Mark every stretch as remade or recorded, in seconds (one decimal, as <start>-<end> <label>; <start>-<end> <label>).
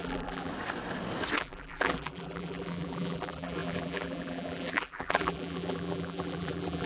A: 0.0-0.5 remade; 0.5-1.4 recorded; 1.4-6.9 remade